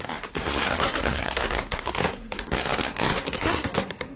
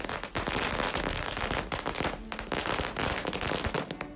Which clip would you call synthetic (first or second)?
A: first